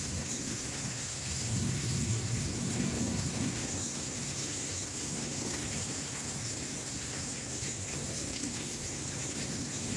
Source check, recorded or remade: remade